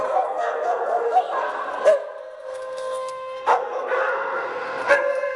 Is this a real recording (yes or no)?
no